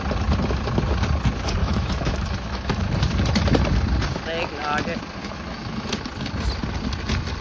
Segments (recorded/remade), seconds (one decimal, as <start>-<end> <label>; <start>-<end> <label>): 0.0-1.6 recorded; 1.6-2.9 remade; 2.9-5.2 recorded; 5.2-6.0 remade; 6.0-7.4 recorded